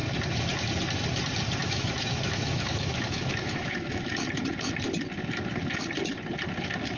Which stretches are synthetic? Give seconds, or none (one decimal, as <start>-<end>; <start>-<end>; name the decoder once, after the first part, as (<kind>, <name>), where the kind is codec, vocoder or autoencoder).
1.6-4.1 (autoencoder, DAC-VAE)